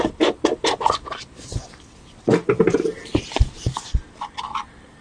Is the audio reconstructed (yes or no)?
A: no